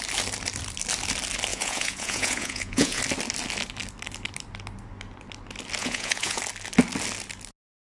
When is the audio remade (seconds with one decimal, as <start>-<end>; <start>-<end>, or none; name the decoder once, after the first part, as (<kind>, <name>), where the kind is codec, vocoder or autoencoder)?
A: 1.5-3.0 (vocoder, Vocos); 5.8-6.4